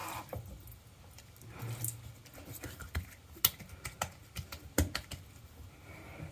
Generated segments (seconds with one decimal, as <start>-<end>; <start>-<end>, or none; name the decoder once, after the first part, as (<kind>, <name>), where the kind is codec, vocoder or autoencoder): none